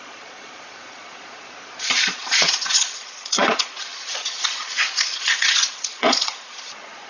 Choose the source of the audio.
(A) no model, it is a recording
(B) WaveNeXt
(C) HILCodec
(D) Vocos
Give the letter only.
D